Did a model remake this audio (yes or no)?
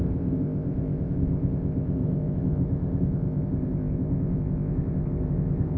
yes